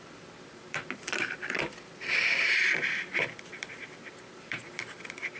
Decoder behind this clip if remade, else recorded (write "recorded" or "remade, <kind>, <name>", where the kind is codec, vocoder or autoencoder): remade, vocoder, BigVGAN v2